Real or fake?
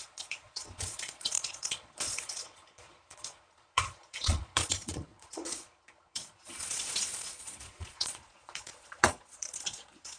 fake